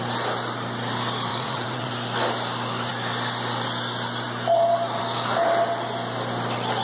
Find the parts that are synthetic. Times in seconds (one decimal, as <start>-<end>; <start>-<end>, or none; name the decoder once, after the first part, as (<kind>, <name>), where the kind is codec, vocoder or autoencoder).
1.3-1.9 (vocoder, WaveNeXt)